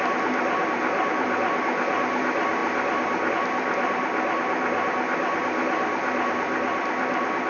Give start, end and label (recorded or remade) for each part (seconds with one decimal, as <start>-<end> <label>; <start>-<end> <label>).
0.0-7.5 recorded